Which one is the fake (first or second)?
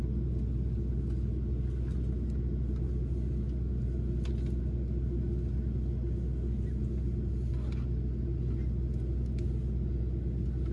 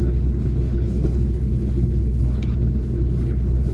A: second